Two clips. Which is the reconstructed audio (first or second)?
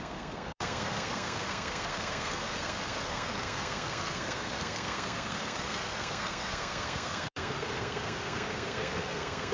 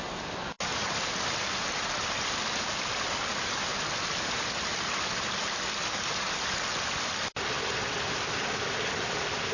first